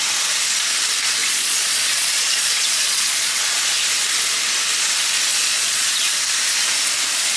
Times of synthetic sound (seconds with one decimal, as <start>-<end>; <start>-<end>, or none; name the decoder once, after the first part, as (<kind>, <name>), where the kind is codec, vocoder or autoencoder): 1.2-3.4 (vocoder, Vocos); 5.3-6.2